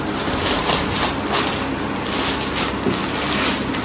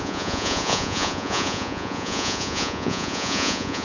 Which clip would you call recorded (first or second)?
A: first